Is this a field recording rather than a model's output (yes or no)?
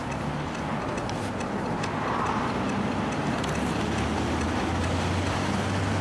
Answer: yes